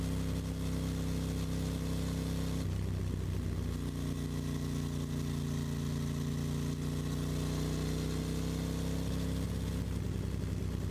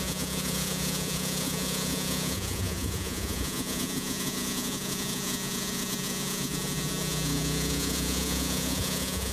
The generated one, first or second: second